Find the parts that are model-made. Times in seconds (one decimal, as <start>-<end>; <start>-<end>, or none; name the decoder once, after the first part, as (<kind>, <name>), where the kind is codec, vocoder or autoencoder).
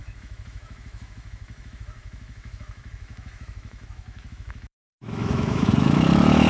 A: 0.0-6.5 (autoencoder, DAC-VAE)